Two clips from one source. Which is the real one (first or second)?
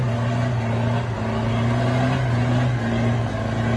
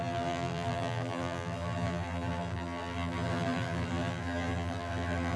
first